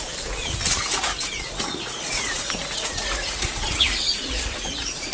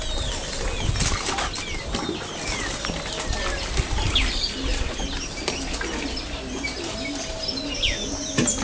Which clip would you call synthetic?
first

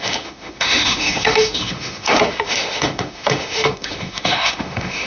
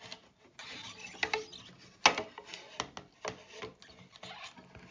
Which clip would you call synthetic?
first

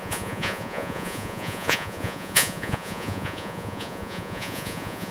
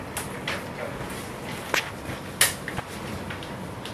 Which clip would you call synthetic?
first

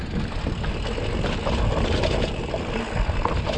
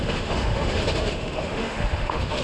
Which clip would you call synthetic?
second